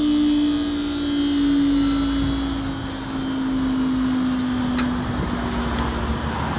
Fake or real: real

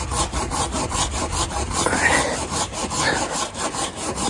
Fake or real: real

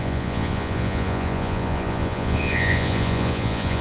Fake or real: fake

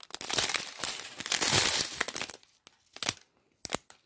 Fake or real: real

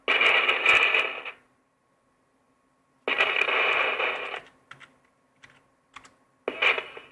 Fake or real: real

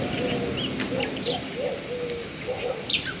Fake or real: real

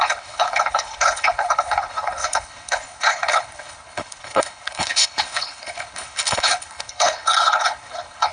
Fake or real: fake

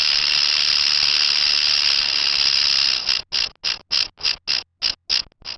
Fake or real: real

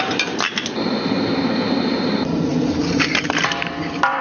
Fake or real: fake